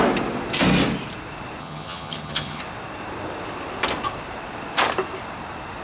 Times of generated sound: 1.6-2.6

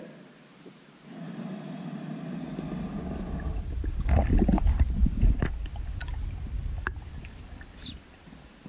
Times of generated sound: none

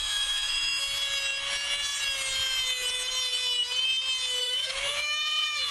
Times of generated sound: 0.0-0.8; 4.4-5.7

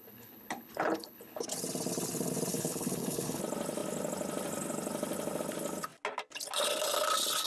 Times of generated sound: 0.0-1.4; 2.5-3.4

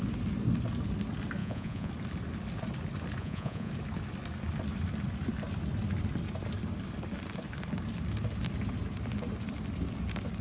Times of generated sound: 1.4-1.9; 3.2-3.7

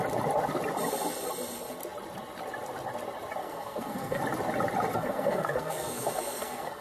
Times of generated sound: 3.4-4.2; 4.9-6.8

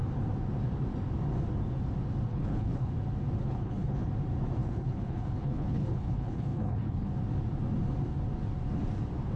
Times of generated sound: 2.3-2.9; 3.4-4.1; 4.6-7.1